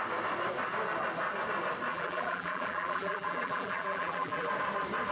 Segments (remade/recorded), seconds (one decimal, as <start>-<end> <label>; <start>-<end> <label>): 0.0-1.9 recorded; 1.9-4.5 remade; 4.5-5.1 recorded